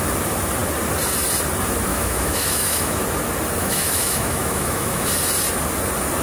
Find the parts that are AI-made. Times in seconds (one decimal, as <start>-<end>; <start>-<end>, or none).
1.9-3.0; 3.6-5.1